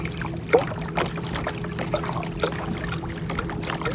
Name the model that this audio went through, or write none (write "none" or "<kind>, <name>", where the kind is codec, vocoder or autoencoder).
none